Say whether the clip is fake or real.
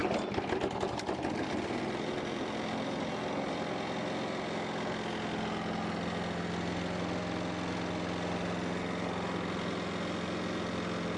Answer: real